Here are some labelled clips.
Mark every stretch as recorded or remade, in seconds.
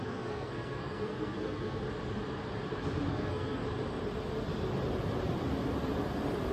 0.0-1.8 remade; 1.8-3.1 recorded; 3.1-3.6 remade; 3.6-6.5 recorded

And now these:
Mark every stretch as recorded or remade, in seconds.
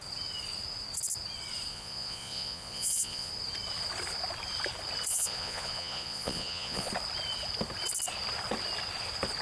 0.0-1.7 recorded; 1.7-3.3 remade; 3.3-5.1 recorded; 5.1-6.9 remade; 6.9-9.4 recorded